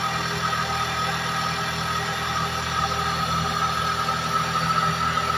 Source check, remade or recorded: recorded